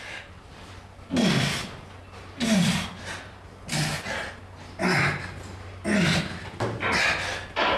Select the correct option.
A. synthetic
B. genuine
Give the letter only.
B